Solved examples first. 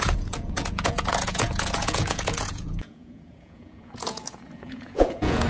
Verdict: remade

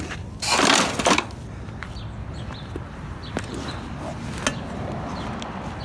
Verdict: recorded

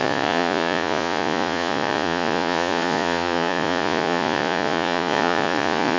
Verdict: remade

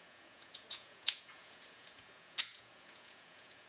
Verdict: remade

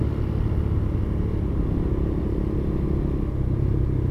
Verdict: recorded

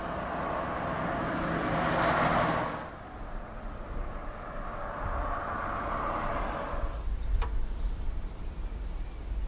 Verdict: recorded